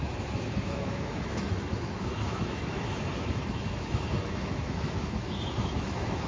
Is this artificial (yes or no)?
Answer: yes